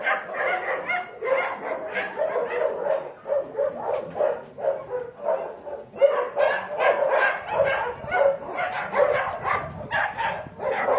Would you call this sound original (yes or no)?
yes